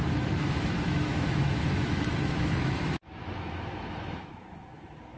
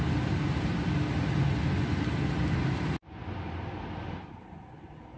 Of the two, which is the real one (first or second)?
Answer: second